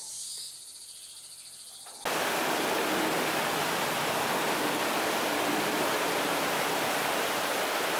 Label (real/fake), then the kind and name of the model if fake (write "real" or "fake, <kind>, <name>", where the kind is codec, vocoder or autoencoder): real